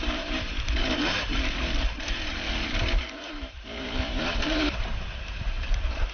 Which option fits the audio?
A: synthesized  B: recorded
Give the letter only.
A